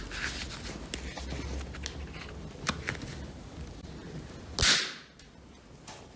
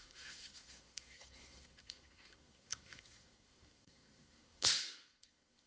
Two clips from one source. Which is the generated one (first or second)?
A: second